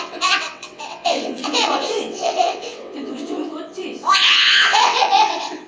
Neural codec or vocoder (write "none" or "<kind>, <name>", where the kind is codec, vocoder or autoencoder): vocoder, WaveNeXt